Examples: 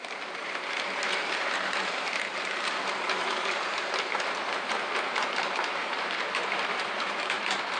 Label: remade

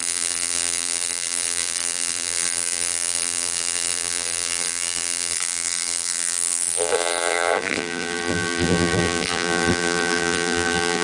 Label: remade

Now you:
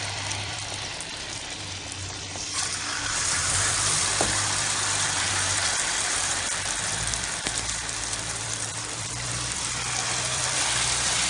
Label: remade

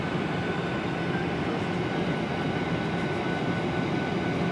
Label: recorded